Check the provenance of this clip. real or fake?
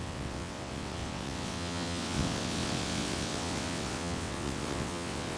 fake